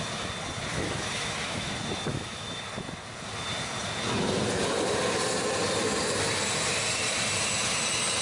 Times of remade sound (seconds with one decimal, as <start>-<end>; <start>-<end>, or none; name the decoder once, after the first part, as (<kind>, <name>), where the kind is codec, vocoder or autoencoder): 0.7-1.7 (autoencoder, DAC-VAE); 2.1-2.6